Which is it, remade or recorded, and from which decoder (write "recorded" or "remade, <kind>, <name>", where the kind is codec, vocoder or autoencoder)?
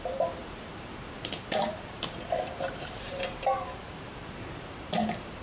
remade, vocoder, BigVGAN v2